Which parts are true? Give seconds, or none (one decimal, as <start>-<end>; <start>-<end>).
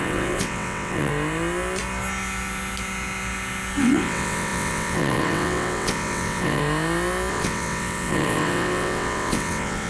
1.1-3.8; 6.6-7.3